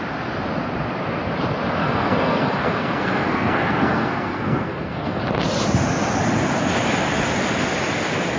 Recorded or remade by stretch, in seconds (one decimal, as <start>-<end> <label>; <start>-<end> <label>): 0.0-1.8 recorded; 1.8-5.2 remade; 5.2-8.4 recorded